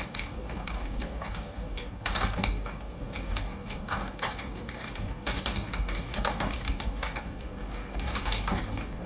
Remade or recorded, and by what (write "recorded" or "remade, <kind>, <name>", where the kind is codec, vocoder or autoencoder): remade, codec, DAC